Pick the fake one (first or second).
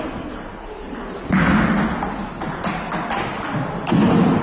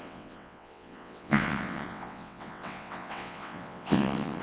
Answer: second